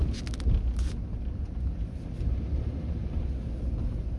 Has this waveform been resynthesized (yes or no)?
no